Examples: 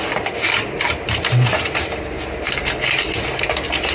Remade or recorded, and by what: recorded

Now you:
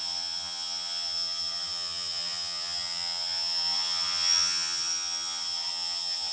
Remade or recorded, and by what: remade, vocoder, HiFi-GAN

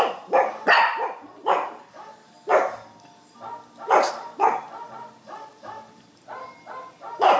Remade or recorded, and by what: recorded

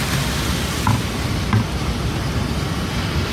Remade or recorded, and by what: remade, vocoder, BigVGAN v2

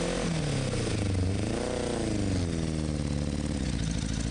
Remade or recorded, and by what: recorded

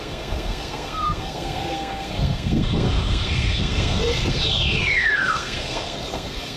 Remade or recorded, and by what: remade, codec, SNAC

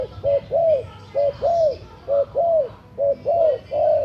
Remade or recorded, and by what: recorded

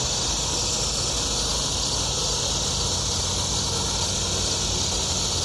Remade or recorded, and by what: recorded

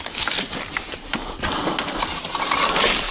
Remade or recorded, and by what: recorded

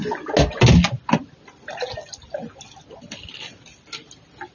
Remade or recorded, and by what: recorded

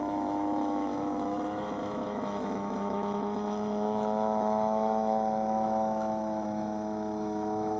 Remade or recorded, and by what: remade, autoencoder, DAC-VAE